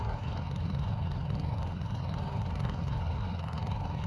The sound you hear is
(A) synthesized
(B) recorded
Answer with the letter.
A